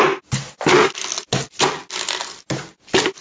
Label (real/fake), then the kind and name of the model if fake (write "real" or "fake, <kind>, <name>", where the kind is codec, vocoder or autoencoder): real